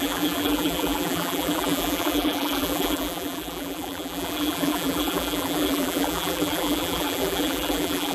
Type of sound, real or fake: fake